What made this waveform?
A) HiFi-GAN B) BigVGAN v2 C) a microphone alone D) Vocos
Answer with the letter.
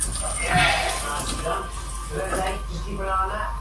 C